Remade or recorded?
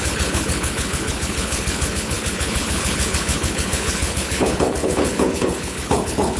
remade